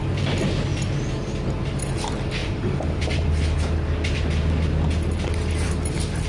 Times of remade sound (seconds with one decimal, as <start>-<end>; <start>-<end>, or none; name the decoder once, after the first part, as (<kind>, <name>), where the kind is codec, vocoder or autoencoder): 0.7-1.8 (vocoder, BigVGAN v2); 2.4-6.3